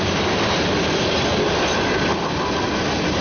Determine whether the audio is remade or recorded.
recorded